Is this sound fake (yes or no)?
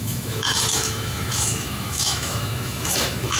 yes